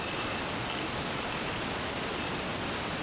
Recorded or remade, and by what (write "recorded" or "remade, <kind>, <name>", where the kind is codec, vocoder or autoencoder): recorded